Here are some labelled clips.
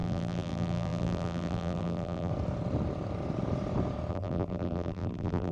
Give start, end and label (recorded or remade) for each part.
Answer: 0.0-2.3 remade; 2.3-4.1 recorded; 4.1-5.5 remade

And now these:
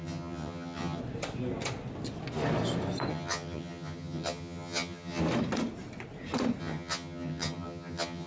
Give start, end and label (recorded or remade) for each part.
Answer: 0.0-1.0 remade; 1.0-3.1 recorded; 3.1-5.2 remade; 5.2-6.6 recorded; 6.6-8.3 remade

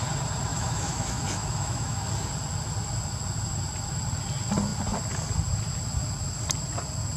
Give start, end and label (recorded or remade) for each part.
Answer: 0.0-0.5 recorded; 0.5-2.1 remade; 2.1-7.2 recorded